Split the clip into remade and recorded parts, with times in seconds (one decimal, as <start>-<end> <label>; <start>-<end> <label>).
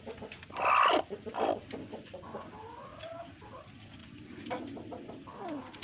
0.0-1.8 recorded; 1.8-2.5 remade; 2.5-5.8 recorded